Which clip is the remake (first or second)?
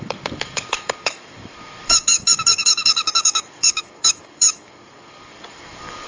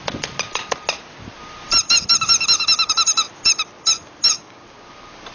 first